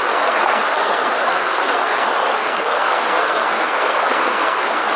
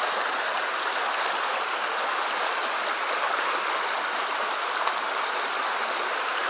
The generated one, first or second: first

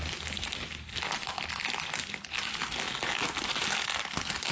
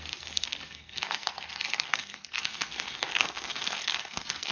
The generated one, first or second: second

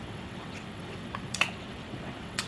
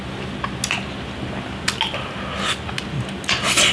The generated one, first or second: first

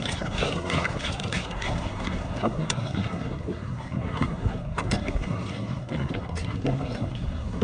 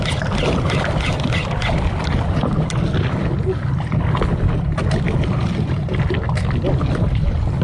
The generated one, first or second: first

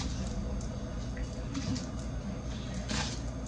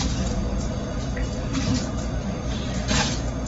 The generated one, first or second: second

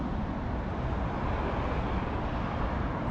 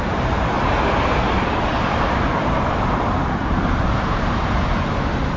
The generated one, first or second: second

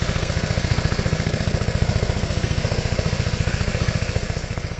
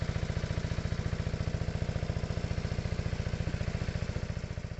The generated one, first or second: first